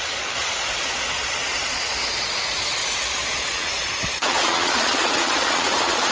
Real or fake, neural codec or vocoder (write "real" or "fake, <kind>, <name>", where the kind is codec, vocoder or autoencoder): fake, vocoder, Vocos